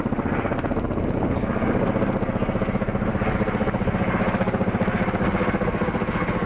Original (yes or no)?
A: yes